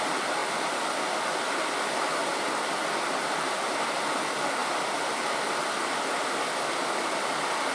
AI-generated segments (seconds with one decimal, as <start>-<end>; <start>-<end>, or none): none